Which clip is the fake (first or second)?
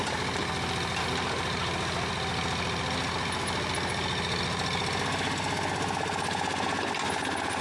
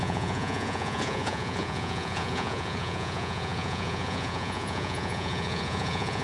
second